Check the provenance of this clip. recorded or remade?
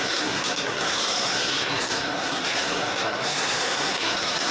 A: remade